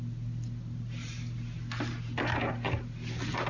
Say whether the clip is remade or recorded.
recorded